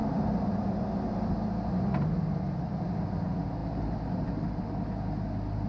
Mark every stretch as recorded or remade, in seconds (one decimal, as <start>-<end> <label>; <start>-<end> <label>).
0.0-5.7 recorded